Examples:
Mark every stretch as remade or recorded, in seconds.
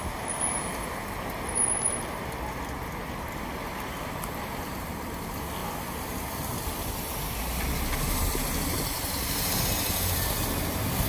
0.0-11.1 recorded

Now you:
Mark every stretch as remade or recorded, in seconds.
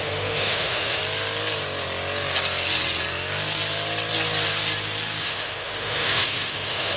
0.0-1.0 remade; 1.0-5.2 recorded; 5.2-7.0 remade